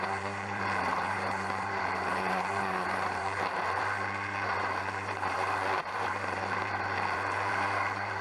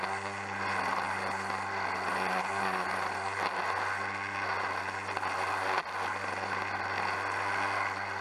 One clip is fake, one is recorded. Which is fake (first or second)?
first